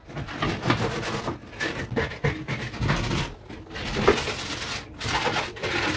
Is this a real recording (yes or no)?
yes